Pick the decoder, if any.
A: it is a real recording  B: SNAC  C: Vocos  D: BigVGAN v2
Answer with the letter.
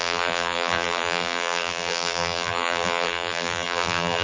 D